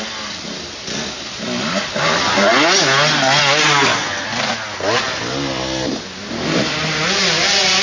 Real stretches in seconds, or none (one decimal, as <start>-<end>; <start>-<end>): 0.0-7.8